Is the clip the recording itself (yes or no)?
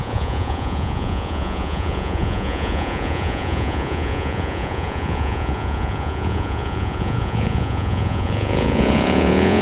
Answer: no